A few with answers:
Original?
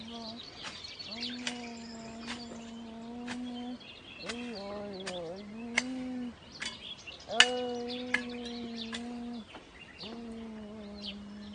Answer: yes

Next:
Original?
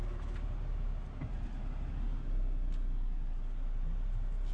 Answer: yes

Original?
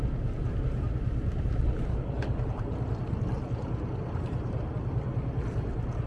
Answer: yes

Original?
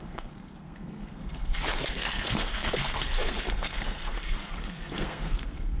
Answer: no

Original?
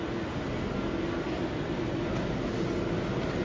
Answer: yes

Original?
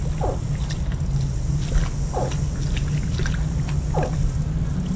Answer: yes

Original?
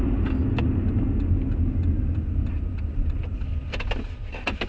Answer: yes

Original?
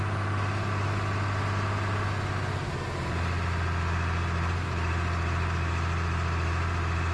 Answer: yes